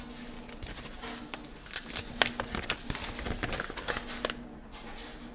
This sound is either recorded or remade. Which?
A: recorded